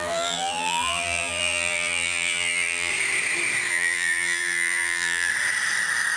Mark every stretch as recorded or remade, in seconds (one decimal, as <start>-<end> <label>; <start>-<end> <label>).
0.0-2.9 remade; 2.9-3.7 recorded; 3.7-5.3 remade; 5.3-6.2 recorded